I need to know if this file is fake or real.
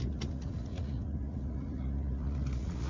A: fake